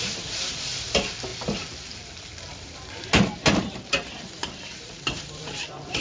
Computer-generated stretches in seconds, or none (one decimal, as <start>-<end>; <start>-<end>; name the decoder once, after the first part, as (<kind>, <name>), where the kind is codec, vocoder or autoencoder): 0.0-1.3 (vocoder, BigVGAN v2); 2.4-6.0